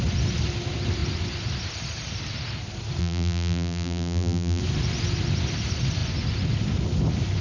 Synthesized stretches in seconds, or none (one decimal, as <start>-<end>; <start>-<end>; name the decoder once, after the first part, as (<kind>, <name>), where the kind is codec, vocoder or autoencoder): 3.0-4.6 (vocoder, BigVGAN v2)